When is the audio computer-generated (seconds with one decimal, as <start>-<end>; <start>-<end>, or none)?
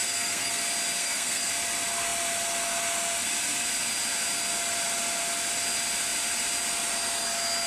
0.0-0.6; 1.0-1.5